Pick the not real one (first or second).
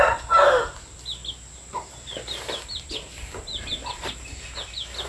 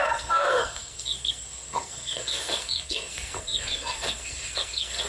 second